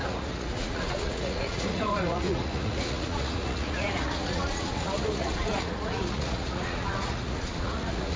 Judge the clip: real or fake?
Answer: fake